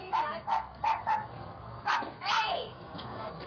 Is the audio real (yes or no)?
no